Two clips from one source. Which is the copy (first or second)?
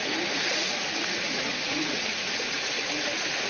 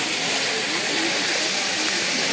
first